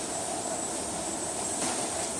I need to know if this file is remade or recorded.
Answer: recorded